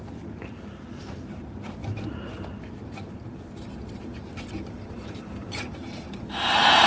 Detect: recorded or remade remade